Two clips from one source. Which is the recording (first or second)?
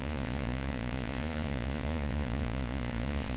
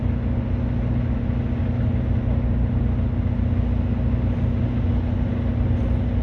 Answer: second